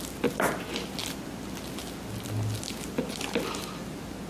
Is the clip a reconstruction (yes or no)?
no